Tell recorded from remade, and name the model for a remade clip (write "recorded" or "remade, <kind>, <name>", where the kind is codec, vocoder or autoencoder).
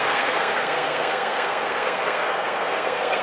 remade, codec, SNAC